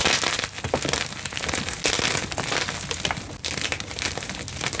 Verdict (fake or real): real